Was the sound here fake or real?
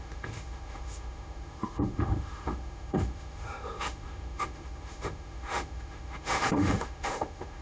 fake